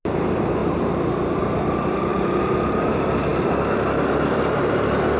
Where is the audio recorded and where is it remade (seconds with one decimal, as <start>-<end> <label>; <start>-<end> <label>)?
0.0-5.2 recorded